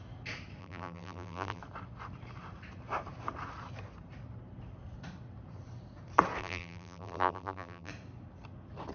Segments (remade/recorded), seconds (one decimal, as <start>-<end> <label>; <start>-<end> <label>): 0.0-0.6 recorded; 0.6-1.6 remade; 1.6-6.4 recorded; 6.4-7.9 remade; 7.9-8.9 recorded